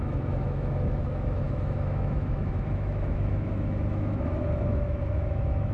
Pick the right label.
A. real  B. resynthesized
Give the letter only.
B